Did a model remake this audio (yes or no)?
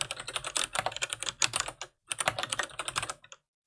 no